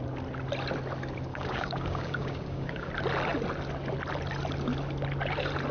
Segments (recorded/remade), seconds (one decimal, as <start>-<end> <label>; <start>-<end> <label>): 0.0-1.3 recorded; 1.3-2.9 remade; 2.9-5.7 recorded